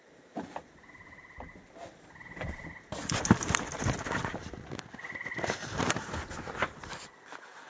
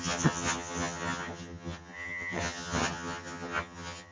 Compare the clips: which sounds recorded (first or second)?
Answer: first